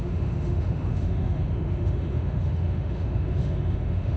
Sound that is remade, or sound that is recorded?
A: remade